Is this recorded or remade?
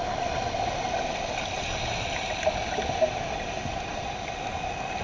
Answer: recorded